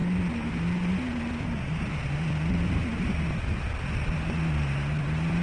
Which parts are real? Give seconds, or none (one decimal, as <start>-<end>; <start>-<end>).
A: 0.0-5.4